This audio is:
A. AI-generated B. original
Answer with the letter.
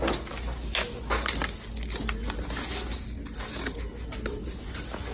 B